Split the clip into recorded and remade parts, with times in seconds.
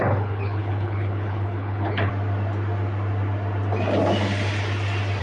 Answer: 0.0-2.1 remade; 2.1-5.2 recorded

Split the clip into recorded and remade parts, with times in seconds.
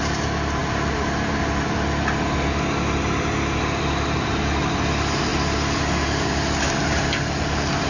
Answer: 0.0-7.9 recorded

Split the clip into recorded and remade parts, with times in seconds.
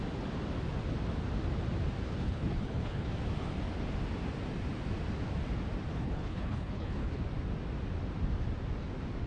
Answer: 0.0-2.2 recorded; 2.2-3.1 remade; 3.1-5.9 recorded; 5.9-7.2 remade; 7.2-9.3 recorded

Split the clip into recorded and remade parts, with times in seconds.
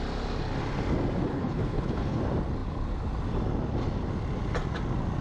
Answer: 0.0-1.3 recorded; 1.3-2.2 remade; 2.2-5.2 recorded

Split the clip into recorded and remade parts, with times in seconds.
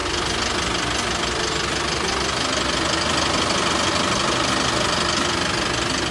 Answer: 0.0-6.1 recorded